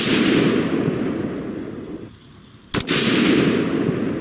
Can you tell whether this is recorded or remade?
recorded